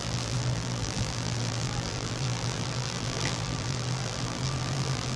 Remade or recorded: remade